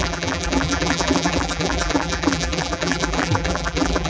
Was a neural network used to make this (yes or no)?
yes